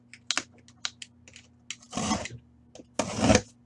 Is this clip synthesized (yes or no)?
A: no